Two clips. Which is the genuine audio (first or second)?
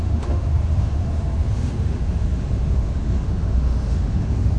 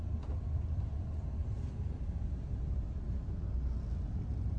second